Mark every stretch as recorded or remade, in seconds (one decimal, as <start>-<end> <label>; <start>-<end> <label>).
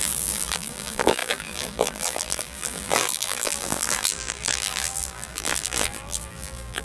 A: 0.0-6.8 remade